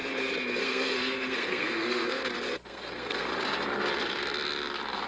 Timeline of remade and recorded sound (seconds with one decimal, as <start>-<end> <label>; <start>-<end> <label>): 0.0-0.6 recorded; 0.6-2.2 remade; 2.2-2.7 recorded; 2.7-3.3 remade; 3.3-5.1 recorded